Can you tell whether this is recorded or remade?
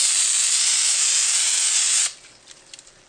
recorded